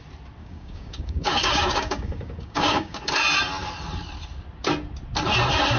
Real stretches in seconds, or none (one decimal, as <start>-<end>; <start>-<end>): 0.0-0.4; 3.0-5.8